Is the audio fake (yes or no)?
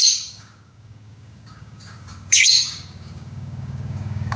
yes